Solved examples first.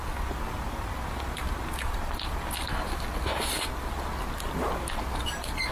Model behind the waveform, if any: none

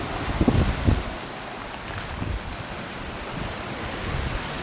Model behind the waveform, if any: none